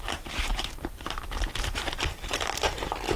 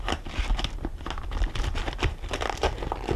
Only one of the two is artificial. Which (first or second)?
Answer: first